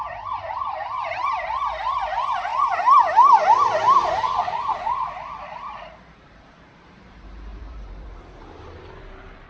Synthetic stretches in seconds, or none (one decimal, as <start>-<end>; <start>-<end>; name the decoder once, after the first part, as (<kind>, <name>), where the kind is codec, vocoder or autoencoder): 0.0-2.5 (vocoder, BigVGAN v2); 5.2-9.5